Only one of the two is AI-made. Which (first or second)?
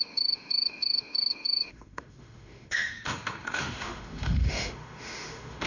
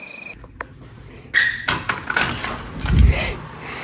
first